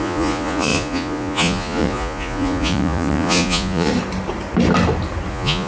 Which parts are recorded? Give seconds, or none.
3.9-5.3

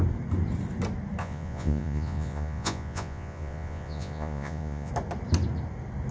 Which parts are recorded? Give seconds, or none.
0.0-1.2; 4.9-6.1

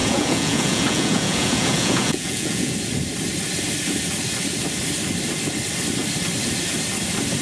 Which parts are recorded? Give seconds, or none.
2.7-7.4

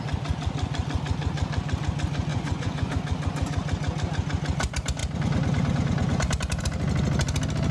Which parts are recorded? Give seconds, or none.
0.0-2.3; 2.9-7.7

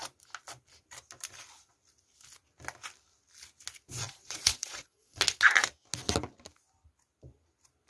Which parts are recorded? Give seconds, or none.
0.0-4.0; 5.2-7.9

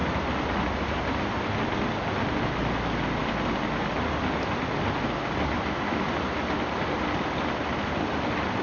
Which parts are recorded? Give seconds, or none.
0.0-8.6

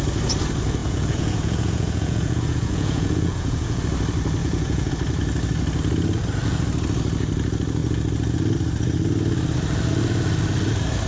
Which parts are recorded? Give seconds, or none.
0.0-0.8; 3.8-4.4; 4.9-11.1

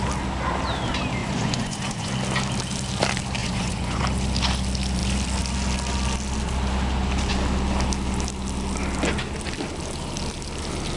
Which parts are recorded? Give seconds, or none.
0.0-1.2; 2.1-3.4; 4.0-11.0